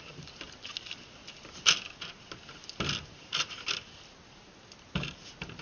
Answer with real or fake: real